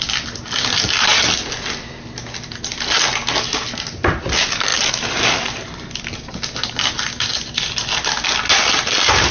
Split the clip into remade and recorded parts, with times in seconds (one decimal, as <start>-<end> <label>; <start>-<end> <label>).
0.0-9.3 recorded